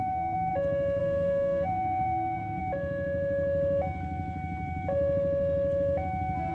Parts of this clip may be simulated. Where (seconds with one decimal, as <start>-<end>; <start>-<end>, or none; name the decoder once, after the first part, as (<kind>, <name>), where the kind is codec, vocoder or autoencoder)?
0.0-0.5 (codec, SNAC); 1.0-2.6